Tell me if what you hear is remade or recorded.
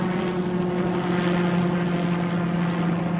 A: recorded